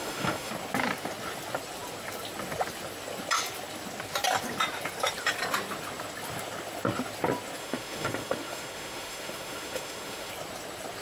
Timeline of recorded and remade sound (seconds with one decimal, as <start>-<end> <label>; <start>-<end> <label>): 0.0-0.5 remade; 0.5-7.6 recorded; 7.6-10.3 remade; 10.3-11.0 recorded